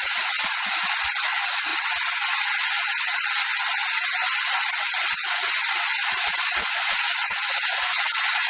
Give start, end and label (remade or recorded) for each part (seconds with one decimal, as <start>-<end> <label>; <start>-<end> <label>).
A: 0.0-8.5 recorded